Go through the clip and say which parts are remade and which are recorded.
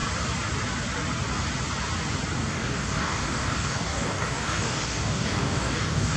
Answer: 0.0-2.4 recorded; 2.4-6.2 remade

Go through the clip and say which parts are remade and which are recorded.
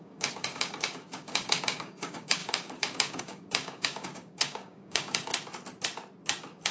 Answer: 0.0-5.3 remade; 5.3-6.7 recorded